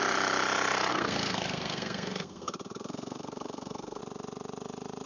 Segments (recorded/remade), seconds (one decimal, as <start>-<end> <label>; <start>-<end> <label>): 0.0-0.9 recorded; 0.9-4.0 remade; 4.0-5.1 recorded